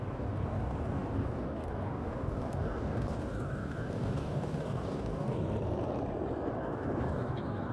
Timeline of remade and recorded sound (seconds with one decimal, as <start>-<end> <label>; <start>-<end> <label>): 0.0-5.4 remade; 5.4-6.5 recorded; 6.5-7.7 remade